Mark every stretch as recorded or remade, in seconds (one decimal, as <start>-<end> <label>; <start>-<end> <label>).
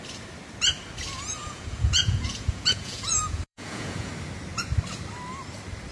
0.0-1.4 recorded; 1.4-4.1 remade; 4.1-5.9 recorded